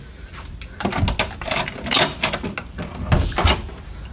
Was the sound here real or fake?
real